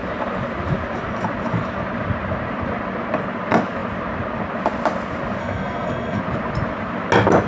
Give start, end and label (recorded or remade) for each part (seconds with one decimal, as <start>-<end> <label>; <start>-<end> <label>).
0.0-5.4 recorded; 5.4-6.2 remade; 6.2-7.5 recorded